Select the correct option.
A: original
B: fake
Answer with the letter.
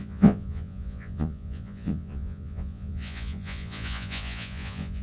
B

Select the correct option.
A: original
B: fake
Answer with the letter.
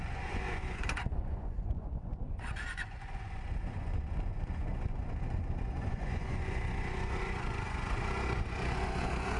B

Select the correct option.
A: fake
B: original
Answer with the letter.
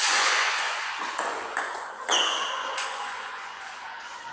A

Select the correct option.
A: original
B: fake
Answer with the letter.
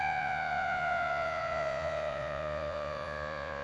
B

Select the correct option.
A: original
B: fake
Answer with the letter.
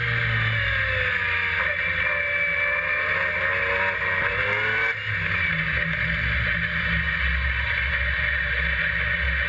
A